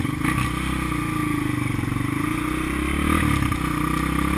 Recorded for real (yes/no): yes